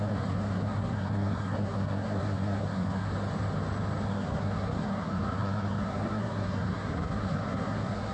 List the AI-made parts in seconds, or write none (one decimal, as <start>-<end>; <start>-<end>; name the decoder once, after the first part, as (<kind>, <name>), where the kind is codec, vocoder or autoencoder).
0.0-3.1 (codec, SNAC); 4.1-8.1